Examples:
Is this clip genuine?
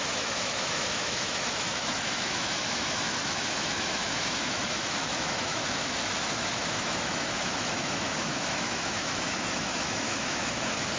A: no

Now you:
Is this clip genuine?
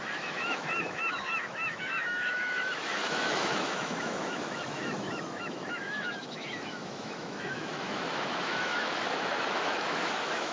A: no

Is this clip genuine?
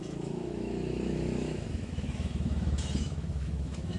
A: no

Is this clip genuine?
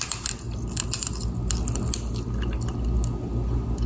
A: yes